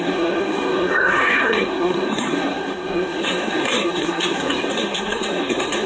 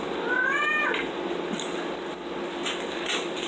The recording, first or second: second